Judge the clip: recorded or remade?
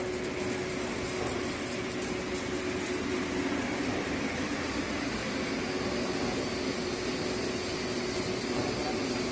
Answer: recorded